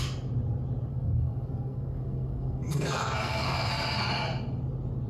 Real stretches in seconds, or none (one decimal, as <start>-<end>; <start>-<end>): 0.0-0.9; 4.0-5.1